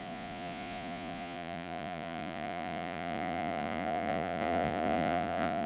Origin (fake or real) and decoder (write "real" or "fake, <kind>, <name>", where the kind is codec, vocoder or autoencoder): fake, vocoder, Vocos